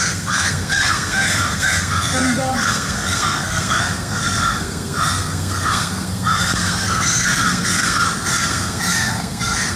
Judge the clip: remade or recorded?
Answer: remade